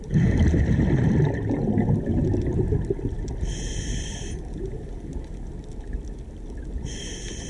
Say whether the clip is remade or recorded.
recorded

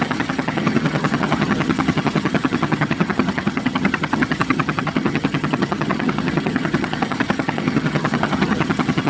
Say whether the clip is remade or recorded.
remade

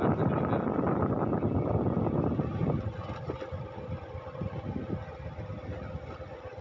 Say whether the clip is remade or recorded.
recorded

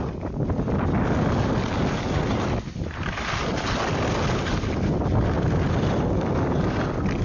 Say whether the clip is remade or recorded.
recorded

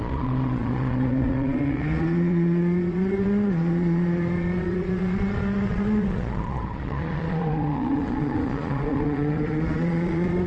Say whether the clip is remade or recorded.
remade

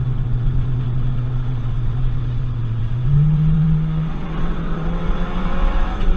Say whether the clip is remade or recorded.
remade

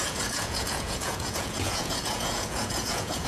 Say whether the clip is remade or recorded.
remade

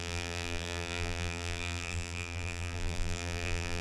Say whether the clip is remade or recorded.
remade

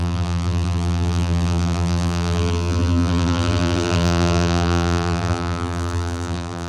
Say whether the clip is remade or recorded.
remade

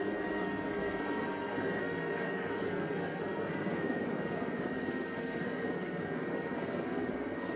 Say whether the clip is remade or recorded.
remade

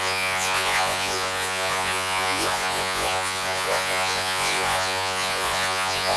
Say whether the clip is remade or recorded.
remade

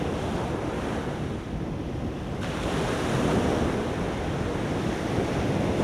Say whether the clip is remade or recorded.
recorded